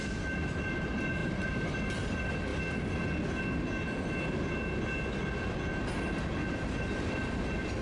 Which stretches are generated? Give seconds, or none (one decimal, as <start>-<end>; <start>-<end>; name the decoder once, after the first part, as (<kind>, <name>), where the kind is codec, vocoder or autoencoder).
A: 1.2-1.7 (vocoder, BigVGAN v2)